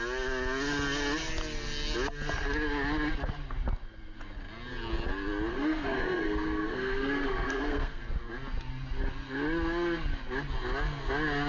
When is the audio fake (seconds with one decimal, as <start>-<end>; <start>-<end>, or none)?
5.5-8.0